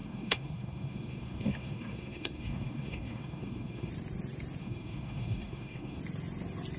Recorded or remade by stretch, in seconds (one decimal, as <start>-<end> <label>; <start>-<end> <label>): 0.0-3.9 remade; 3.9-4.6 recorded; 4.6-6.0 remade; 6.0-6.8 recorded